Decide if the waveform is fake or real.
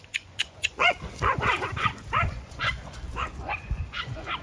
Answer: fake